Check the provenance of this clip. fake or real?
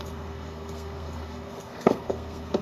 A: fake